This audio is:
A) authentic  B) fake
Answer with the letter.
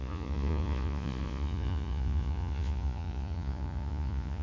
B